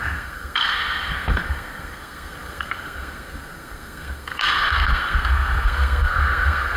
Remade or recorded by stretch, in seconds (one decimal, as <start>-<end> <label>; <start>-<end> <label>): 0.0-6.8 remade